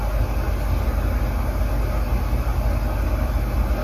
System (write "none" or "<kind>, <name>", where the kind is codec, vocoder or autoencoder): none